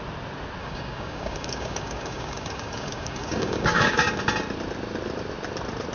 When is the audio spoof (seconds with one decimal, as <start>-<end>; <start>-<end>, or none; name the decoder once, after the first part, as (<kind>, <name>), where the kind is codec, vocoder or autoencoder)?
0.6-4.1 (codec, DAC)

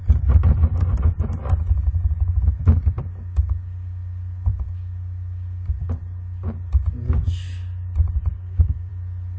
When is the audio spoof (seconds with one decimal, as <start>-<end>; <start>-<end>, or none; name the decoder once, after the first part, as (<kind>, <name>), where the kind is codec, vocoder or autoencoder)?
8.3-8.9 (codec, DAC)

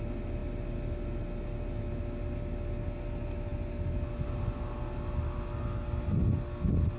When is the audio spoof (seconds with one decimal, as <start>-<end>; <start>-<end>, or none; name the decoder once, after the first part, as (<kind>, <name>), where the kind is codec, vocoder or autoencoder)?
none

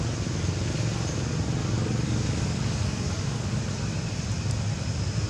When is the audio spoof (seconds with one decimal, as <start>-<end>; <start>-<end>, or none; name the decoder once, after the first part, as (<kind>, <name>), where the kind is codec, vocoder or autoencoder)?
1.6-3.6 (codec, DAC)

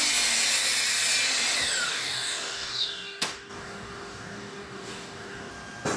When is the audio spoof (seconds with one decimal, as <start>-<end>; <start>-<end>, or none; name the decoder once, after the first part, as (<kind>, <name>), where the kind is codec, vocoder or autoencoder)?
1.9-5.5 (codec, DAC)

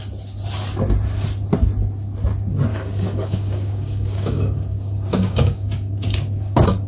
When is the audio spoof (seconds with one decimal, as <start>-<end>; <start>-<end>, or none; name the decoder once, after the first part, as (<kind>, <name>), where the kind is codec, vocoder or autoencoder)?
2.7-6.9 (codec, DAC)